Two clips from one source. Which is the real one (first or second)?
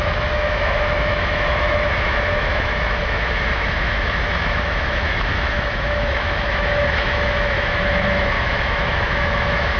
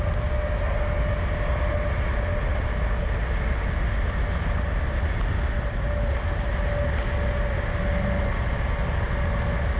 second